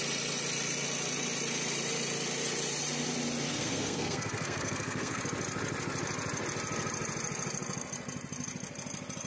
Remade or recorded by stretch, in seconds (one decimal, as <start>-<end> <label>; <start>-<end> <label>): 0.0-3.5 recorded; 3.5-5.2 remade; 5.2-9.3 recorded